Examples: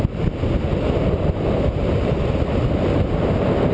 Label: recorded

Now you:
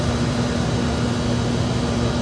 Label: recorded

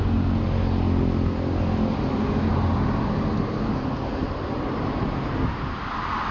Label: recorded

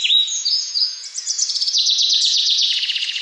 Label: remade